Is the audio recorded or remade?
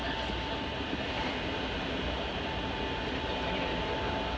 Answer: recorded